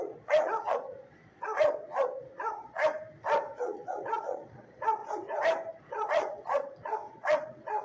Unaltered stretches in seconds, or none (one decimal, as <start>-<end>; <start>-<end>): 2.8-3.5; 5.0-5.8